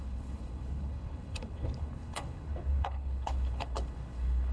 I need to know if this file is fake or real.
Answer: fake